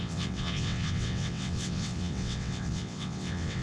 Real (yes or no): no